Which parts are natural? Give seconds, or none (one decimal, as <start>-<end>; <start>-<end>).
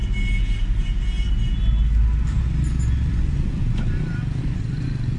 0.0-3.1; 3.6-4.4